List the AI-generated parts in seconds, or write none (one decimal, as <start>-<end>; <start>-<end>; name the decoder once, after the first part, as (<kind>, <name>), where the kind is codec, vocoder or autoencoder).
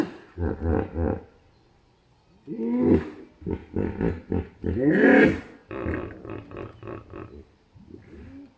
none